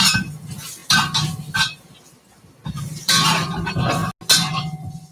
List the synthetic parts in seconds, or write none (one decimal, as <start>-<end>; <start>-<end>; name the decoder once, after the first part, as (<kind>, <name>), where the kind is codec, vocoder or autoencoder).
0.0-0.8 (vocoder, BigVGAN v2); 1.3-4.0; 4.5-5.1